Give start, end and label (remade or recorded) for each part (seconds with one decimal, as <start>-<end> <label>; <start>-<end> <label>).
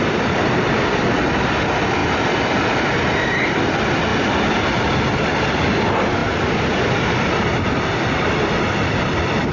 0.0-2.0 remade; 2.0-2.6 recorded; 2.6-4.1 remade; 4.1-4.9 recorded; 4.9-9.5 remade